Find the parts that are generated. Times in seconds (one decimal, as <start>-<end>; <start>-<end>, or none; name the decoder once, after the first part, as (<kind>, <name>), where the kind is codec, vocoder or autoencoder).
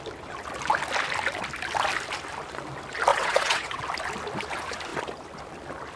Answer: 3.1-3.8 (vocoder, WaveNeXt)